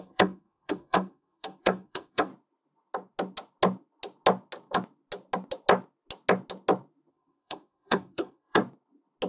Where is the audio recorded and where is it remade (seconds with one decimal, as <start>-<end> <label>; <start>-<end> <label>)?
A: 0.0-2.3 remade; 2.3-7.1 recorded; 7.1-8.6 remade; 8.6-9.3 recorded